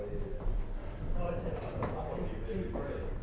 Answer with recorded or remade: recorded